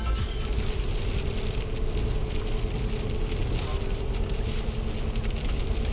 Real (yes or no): yes